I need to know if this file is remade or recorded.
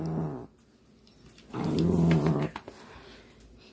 recorded